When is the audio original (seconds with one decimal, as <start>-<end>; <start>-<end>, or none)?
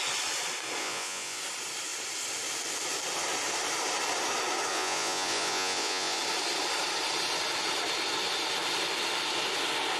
0.0-0.8; 1.4-4.7; 6.2-10.0